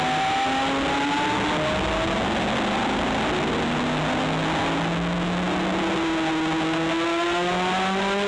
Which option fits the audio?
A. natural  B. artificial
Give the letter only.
A